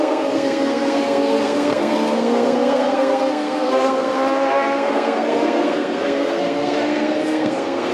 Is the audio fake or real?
fake